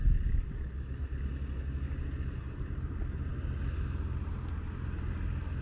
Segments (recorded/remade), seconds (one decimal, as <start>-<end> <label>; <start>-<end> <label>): 0.0-5.6 recorded